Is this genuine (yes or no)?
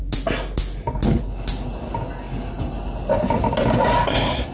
yes